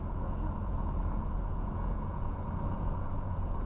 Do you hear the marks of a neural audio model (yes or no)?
yes